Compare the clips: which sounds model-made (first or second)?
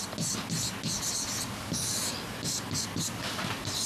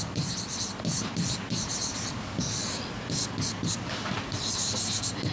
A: second